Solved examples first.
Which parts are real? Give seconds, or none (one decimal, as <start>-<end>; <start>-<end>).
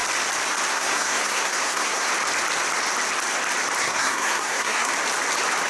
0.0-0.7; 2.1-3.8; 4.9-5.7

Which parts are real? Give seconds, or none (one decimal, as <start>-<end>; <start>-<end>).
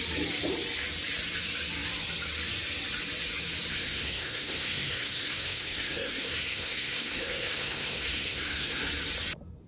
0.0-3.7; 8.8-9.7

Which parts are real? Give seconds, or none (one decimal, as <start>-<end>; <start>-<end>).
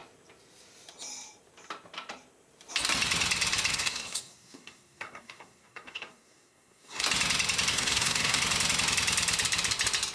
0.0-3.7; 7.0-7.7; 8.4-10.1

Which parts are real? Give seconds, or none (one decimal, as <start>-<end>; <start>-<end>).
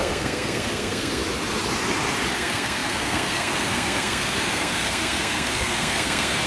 1.2-2.3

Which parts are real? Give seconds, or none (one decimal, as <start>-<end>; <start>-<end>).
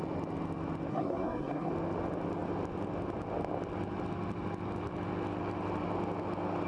0.0-0.9; 1.7-6.7